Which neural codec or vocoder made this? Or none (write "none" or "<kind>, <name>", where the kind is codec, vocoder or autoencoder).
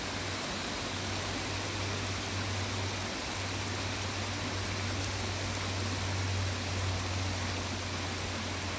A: none